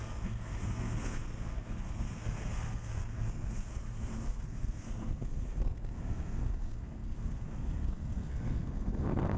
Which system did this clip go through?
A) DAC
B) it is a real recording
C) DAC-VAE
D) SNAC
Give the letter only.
D